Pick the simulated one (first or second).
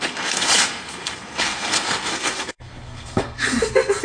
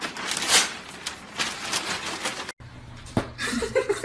first